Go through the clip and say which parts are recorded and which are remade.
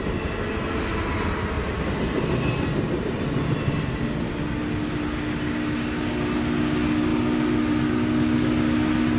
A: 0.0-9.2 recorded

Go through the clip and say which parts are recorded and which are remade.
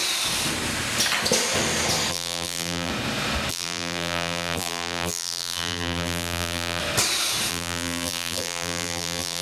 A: 0.0-2.1 recorded; 2.1-2.9 remade; 2.9-3.5 recorded; 3.5-6.8 remade; 6.8-7.5 recorded; 7.5-9.4 remade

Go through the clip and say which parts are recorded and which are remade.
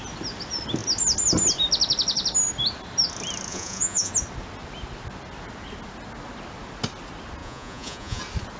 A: 0.0-3.5 recorded; 3.5-4.1 remade; 4.1-7.4 recorded; 7.4-8.2 remade; 8.2-8.6 recorded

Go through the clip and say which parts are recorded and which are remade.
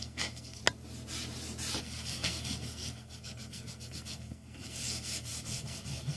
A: 0.0-0.6 remade; 0.6-1.8 recorded; 1.8-6.2 remade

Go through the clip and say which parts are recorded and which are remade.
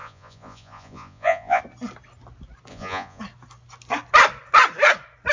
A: 0.0-1.6 remade; 1.6-2.7 recorded; 2.7-3.2 remade; 3.2-5.3 recorded